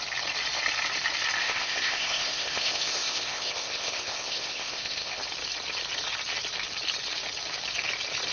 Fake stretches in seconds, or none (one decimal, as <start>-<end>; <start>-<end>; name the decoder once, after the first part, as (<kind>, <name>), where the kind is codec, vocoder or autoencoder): 1.4-5.2 (codec, ZipCodec)